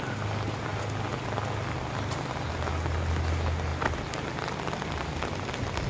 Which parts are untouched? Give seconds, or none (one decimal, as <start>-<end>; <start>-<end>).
0.0-5.9